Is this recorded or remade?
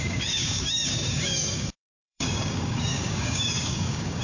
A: remade